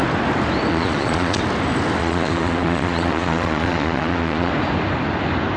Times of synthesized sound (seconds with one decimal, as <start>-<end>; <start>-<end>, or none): 0.7-1.4; 2.0-4.5